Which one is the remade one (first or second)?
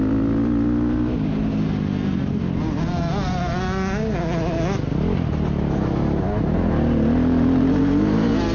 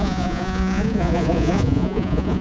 second